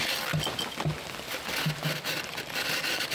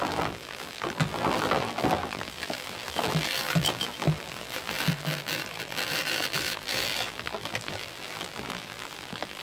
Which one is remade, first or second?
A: second